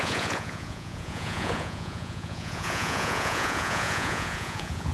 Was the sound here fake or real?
fake